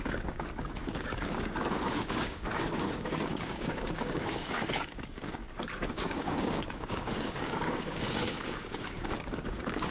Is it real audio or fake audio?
fake